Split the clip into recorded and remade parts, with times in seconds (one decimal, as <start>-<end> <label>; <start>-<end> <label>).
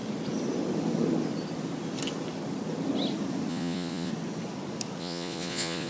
0.0-3.5 recorded; 3.5-4.1 remade; 4.1-5.0 recorded; 5.0-5.9 remade